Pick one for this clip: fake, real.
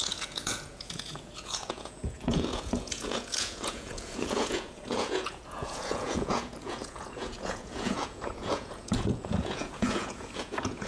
fake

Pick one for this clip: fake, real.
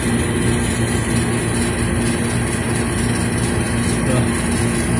real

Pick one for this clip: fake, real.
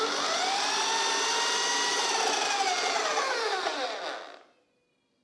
real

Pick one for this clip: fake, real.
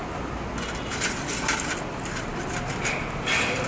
real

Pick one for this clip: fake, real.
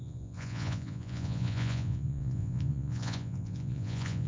fake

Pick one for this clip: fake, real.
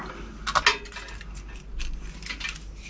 real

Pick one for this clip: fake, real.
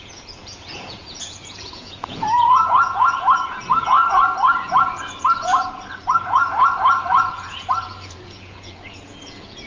fake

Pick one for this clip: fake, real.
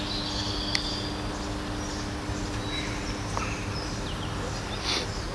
real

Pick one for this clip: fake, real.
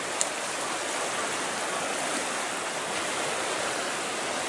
real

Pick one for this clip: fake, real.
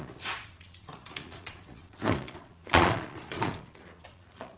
fake